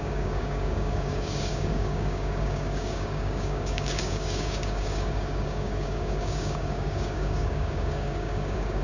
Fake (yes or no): yes